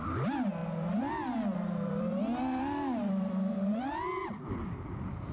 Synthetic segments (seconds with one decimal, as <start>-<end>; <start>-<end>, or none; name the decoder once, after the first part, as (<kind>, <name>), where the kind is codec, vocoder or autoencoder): 0.6-3.8 (vocoder, BigVGAN v2); 4.2-5.3